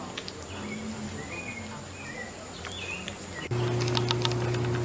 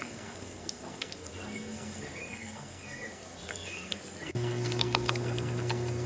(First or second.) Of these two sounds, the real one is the first